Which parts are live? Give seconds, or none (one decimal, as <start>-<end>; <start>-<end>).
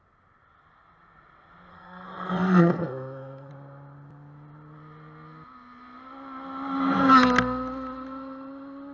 0.0-1.7; 3.5-8.9